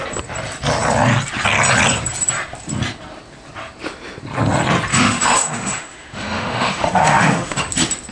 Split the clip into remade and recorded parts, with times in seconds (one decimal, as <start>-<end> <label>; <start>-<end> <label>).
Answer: 0.0-4.9 recorded; 4.9-7.6 remade; 7.6-8.1 recorded